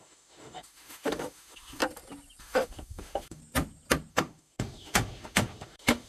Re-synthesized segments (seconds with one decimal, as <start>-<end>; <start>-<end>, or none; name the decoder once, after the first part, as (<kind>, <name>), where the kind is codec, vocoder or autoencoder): 0.0-1.8 (autoencoder, DAC-VAE); 2.4-3.4; 4.1-6.1

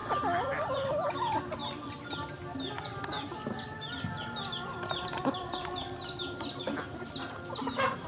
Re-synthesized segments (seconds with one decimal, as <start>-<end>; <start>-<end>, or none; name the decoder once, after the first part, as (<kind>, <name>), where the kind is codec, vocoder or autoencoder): none

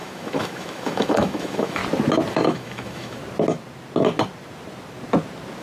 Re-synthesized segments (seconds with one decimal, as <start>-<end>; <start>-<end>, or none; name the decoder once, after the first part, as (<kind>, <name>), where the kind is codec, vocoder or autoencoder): 0.0-1.8 (autoencoder, DAC-VAE); 2.3-3.2

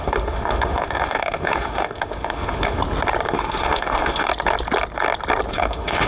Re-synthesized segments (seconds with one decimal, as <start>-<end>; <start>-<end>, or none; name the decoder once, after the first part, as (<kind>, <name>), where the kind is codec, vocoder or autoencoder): 0.0-2.8 (autoencoder, DAC-VAE); 3.3-4.3; 5.5-6.1

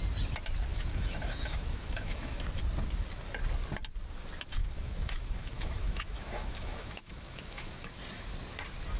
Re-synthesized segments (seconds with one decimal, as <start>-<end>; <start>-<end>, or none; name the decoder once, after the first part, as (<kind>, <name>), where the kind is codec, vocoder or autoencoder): 0.7-2.4 (autoencoder, DAC-VAE); 4.6-8.0

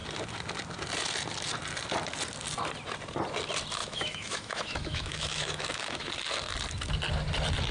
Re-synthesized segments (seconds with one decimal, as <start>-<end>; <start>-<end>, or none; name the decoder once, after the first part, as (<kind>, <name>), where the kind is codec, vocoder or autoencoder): 3.8-6.1 (autoencoder, DAC-VAE)

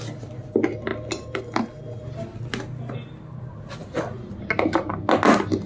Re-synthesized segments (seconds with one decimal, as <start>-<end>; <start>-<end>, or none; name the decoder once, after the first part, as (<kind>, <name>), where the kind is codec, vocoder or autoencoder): none

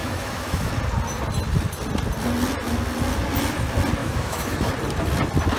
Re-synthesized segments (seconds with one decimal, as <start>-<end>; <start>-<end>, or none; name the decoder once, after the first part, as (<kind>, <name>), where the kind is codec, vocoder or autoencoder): 0.0-0.7 (autoencoder, DAC-VAE); 4.0-4.7